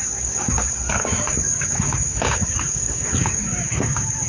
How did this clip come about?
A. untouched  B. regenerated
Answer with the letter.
B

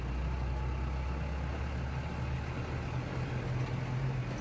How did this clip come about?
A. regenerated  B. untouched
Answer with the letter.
B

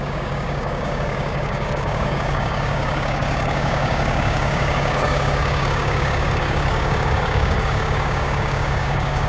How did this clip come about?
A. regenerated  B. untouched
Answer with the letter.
A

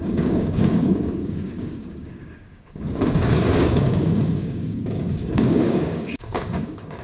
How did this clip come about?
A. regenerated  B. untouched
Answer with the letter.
A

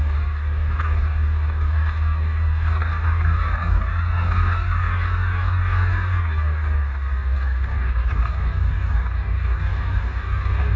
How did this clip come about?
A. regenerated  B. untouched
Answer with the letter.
A